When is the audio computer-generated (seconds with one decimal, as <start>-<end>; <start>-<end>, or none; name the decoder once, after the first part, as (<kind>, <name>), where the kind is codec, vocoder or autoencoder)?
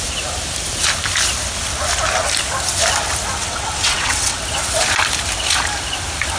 3.4-4.4 (vocoder, WaveNeXt)